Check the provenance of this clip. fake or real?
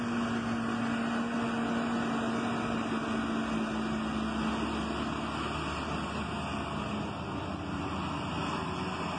real